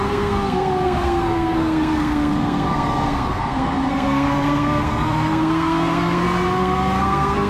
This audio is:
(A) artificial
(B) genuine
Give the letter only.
A